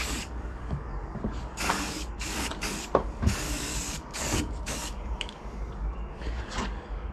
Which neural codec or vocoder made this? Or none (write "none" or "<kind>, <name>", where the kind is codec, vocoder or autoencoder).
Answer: codec, DAC